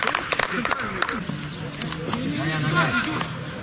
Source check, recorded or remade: recorded